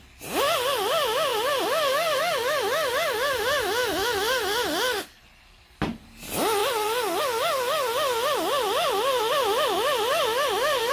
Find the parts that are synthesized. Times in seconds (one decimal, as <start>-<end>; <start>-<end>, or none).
1.3-2.2; 6.6-7.2; 10.1-10.9